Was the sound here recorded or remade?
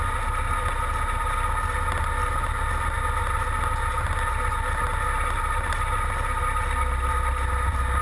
recorded